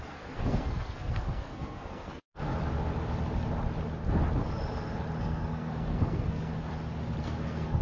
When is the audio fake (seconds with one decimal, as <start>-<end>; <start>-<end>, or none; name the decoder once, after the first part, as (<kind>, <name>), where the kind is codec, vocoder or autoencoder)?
0.0-2.5 (codec, SNAC); 5.2-6.5; 7.2-7.8